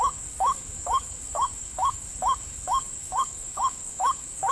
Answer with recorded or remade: remade